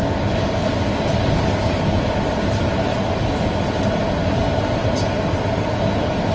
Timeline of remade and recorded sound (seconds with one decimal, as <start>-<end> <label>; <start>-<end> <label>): 0.0-6.3 recorded